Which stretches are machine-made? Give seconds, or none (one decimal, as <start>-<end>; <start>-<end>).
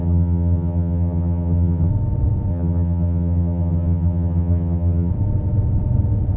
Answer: 0.0-1.9; 2.5-5.1